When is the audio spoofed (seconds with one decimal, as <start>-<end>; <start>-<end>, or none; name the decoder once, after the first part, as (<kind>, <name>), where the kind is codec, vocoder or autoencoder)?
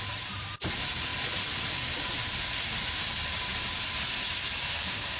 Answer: 0.0-1.1 (vocoder, BigVGAN v2); 4.2-5.2